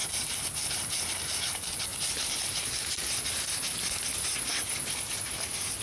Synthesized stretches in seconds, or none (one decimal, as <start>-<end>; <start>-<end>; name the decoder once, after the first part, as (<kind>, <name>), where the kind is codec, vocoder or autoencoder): none

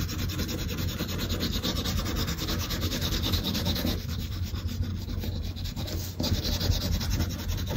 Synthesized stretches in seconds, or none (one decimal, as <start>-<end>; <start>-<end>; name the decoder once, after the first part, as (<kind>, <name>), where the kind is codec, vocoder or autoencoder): 2.2-4.5 (codec, DAC); 4.9-6.5

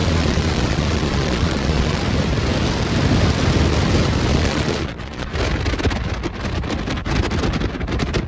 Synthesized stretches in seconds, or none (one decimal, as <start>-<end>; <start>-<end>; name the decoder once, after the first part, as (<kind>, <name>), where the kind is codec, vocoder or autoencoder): 0.0-2.0 (vocoder, Vocos); 4.3-5.3

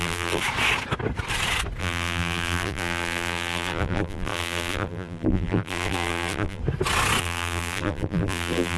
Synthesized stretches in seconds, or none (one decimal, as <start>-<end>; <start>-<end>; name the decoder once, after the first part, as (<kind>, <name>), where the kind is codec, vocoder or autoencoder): 0.0-0.4 (vocoder, BigVGAN v2); 1.8-6.6; 7.2-8.8

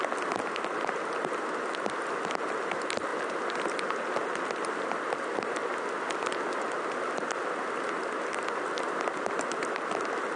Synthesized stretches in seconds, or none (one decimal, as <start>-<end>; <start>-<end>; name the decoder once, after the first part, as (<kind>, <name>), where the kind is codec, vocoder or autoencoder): none

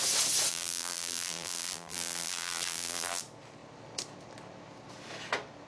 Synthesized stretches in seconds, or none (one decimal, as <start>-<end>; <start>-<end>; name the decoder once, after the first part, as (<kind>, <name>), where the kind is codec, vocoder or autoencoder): 0.5-3.2 (vocoder, BigVGAN v2)

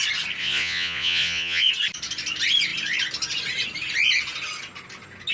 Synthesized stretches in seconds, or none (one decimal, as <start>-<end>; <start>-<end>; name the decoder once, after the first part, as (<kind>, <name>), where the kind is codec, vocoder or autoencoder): 0.4-1.7 (vocoder, Vocos)

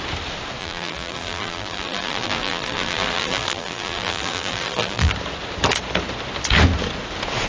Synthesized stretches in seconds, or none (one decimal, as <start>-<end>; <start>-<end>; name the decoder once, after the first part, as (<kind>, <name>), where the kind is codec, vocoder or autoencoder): 0.6-5.1 (vocoder, BigVGAN v2)